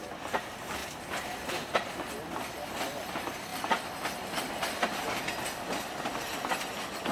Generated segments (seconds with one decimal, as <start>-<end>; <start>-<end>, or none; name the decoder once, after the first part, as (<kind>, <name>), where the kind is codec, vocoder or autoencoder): 0.8-1.8 (vocoder, BigVGAN v2); 3.5-4.4